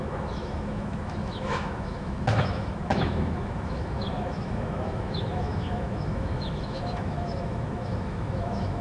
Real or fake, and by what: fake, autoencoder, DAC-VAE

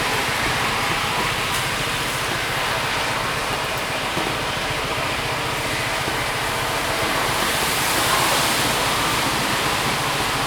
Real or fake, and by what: fake, vocoder, BigVGAN v2